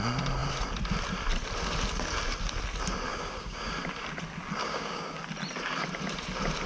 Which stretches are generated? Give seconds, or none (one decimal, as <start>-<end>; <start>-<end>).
3.1-3.7; 4.6-5.2